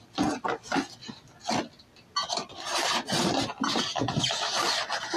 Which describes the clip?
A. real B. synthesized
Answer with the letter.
A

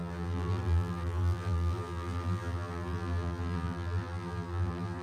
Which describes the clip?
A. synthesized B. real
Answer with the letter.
A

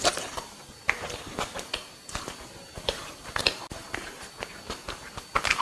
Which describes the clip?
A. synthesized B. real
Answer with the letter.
A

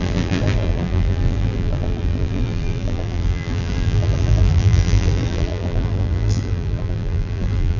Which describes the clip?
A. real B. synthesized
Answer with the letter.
B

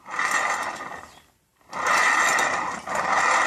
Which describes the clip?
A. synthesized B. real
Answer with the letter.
B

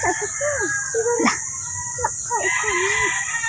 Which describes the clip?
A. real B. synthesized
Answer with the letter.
A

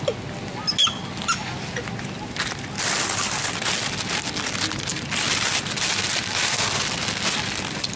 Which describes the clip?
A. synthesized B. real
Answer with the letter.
B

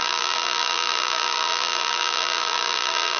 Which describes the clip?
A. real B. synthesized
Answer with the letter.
B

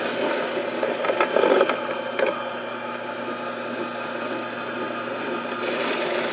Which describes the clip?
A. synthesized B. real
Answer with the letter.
B